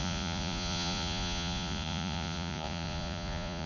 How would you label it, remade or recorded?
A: remade